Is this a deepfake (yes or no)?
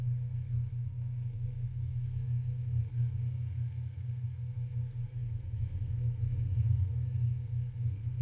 yes